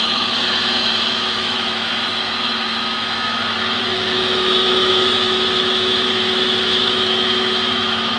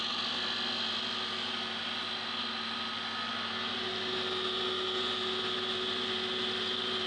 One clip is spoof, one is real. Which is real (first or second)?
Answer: second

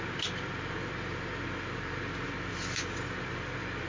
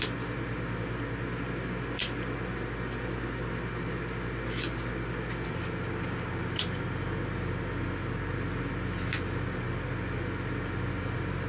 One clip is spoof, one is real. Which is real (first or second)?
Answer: second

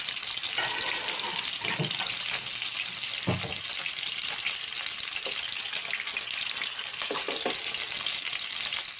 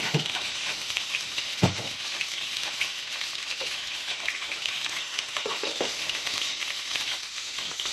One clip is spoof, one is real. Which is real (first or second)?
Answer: first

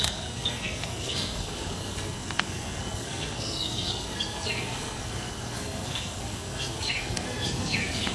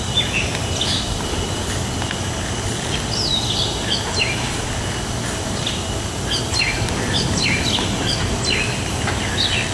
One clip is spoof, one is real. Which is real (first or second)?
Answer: second